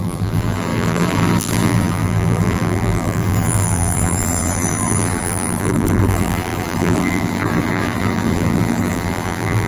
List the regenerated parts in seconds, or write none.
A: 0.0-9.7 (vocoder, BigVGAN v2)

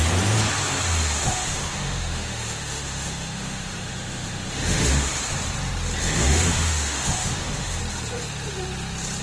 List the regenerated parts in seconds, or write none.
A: 1.2-5.1 (autoencoder, DAC-VAE); 6.0-7.8

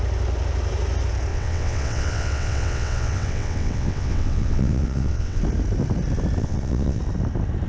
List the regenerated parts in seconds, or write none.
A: 1.3-5.4 (vocoder, WaveNeXt); 6.4-7.0